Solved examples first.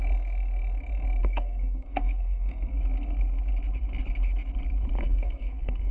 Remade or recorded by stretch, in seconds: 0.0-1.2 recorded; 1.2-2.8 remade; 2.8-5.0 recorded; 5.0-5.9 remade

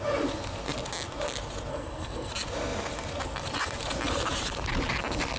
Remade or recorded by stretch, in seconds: 0.0-1.7 recorded; 1.7-2.3 remade; 2.3-5.4 recorded

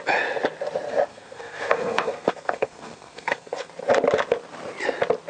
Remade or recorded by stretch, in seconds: 0.0-1.1 recorded; 1.1-3.7 remade; 3.7-5.3 recorded

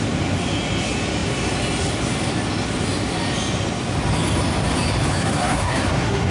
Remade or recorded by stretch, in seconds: 0.0-5.2 recorded; 5.2-6.3 remade

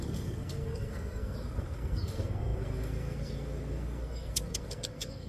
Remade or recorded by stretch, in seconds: 0.0-5.3 remade